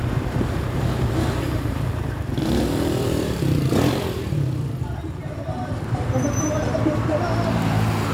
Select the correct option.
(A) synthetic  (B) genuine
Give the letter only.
A